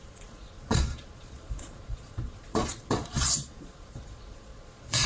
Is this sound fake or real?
fake